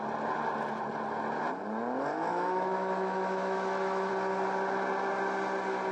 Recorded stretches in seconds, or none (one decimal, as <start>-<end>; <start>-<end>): 0.0-2.3; 4.1-5.9